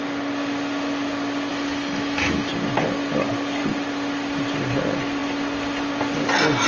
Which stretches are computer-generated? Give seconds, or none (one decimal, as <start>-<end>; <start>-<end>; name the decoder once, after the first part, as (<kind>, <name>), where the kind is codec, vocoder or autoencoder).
1.5-2.5 (autoencoder, DAC-VAE)